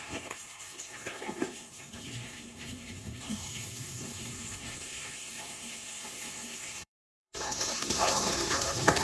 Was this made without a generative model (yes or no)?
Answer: no